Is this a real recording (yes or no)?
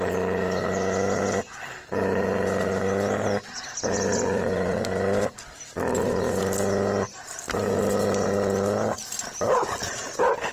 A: yes